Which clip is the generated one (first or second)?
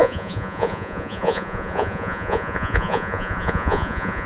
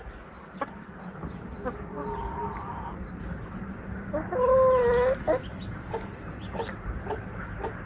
first